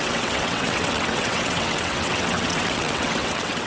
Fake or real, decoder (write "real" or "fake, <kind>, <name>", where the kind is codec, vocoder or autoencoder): fake, vocoder, WaveNeXt